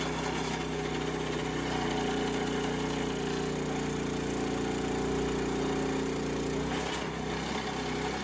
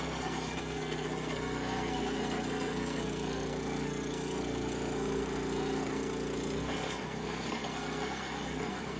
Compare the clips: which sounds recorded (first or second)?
first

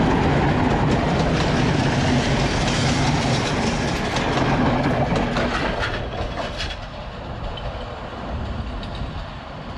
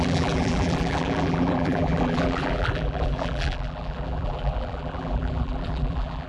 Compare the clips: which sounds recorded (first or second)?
first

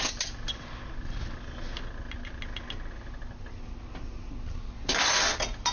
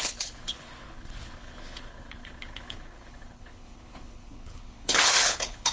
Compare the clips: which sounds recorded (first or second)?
first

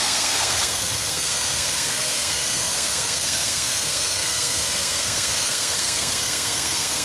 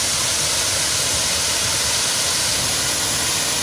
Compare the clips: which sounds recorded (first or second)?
second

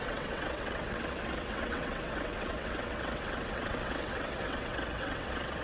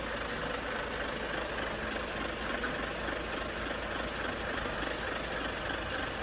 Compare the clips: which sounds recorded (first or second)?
second